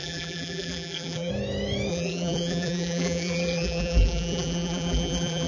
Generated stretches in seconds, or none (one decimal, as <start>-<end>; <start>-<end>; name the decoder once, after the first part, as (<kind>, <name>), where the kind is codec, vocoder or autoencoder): 0.0-1.3 (vocoder, BigVGAN v2); 1.9-5.5